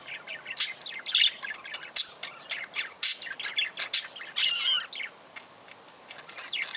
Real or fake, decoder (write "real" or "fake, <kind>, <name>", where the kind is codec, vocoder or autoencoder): real